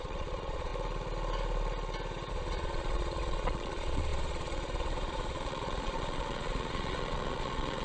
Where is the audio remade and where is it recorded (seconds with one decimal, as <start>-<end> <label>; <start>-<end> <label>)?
0.0-0.7 remade; 0.7-2.3 recorded; 2.3-7.8 remade